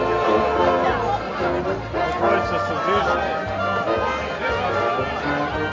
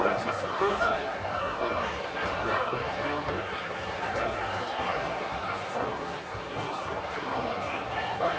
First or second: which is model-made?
second